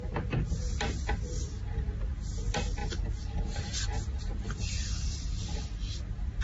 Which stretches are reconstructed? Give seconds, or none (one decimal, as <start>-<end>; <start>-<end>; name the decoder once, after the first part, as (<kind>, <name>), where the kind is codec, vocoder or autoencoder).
none